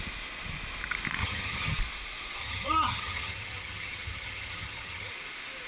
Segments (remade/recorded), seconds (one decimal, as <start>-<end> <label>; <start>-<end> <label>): 0.0-1.2 recorded; 1.2-1.8 remade; 1.8-2.4 recorded; 2.4-5.1 remade; 5.1-5.7 recorded